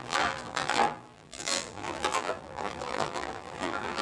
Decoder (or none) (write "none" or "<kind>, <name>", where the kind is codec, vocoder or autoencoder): vocoder, BigVGAN v2